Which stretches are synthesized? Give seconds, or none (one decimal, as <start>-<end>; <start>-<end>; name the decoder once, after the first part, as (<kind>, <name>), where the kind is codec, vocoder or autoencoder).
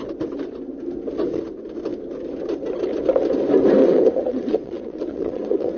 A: 3.8-5.8 (vocoder, WaveNeXt)